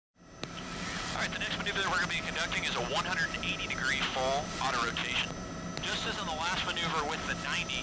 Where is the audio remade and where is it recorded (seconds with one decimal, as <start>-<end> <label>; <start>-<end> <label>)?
0.0-7.8 recorded